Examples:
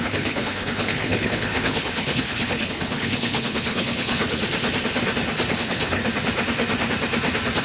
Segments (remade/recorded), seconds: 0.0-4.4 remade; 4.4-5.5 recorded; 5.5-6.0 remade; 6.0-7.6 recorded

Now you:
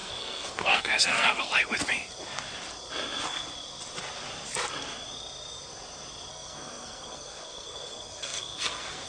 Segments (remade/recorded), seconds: 0.0-1.5 remade; 1.5-6.3 recorded; 6.3-9.1 remade

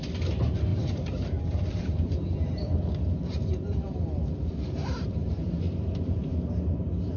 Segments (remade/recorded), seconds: 0.0-0.7 recorded; 0.7-2.8 remade; 2.8-4.8 recorded; 4.8-6.3 remade; 6.3-7.2 recorded

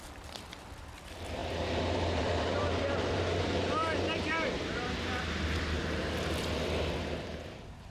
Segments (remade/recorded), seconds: 0.0-7.9 remade

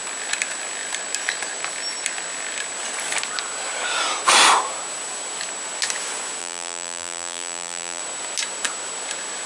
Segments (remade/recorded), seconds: 0.0-6.4 recorded; 6.4-8.0 remade; 8.0-9.5 recorded

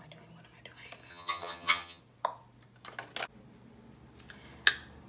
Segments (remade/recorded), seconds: 0.0-1.1 recorded; 1.1-2.0 remade; 2.0-5.1 recorded

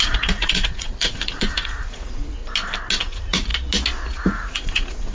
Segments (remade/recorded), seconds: 0.0-2.4 remade; 2.4-3.0 recorded; 3.0-3.5 remade; 3.5-4.1 recorded; 4.1-5.1 remade